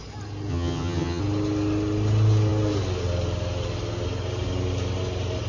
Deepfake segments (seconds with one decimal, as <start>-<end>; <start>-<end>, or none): 0.5-1.2